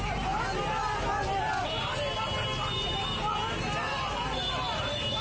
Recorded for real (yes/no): yes